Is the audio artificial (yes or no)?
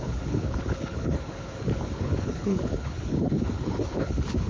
yes